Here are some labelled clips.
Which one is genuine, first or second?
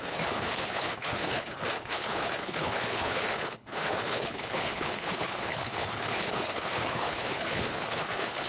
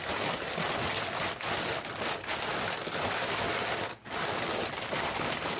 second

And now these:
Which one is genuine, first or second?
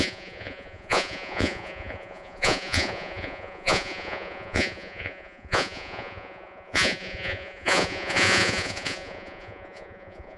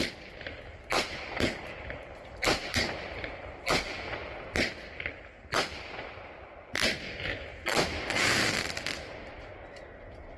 second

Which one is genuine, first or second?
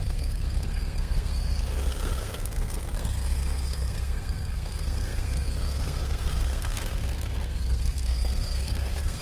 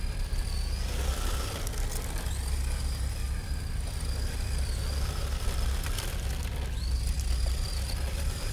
second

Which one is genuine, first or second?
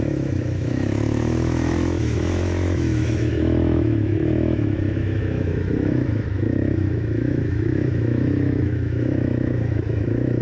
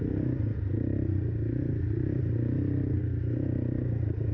second